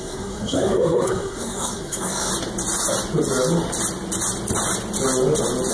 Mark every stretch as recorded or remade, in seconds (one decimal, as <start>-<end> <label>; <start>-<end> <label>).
0.0-2.3 remade; 2.3-5.7 recorded

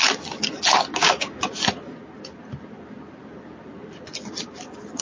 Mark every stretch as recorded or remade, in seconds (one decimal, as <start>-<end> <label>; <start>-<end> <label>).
0.0-0.9 recorded; 0.9-1.4 remade; 1.4-5.0 recorded

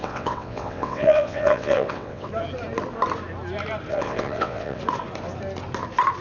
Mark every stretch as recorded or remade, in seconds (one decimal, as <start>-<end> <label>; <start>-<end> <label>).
0.0-2.3 remade; 2.3-3.9 recorded; 3.9-4.8 remade; 4.8-6.2 recorded

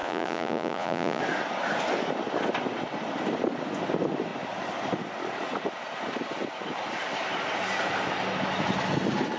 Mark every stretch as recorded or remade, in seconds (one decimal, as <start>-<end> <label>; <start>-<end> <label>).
0.0-1.2 remade; 1.2-9.4 recorded

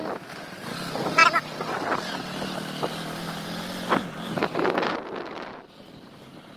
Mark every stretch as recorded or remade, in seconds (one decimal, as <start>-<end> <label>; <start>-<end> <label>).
0.0-5.5 recorded; 5.5-6.6 remade

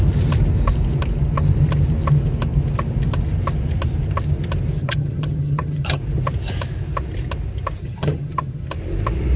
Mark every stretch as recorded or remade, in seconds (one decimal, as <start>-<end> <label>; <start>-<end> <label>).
0.0-4.8 recorded; 4.8-6.0 remade; 6.0-7.8 recorded; 7.8-8.7 remade; 8.7-9.4 recorded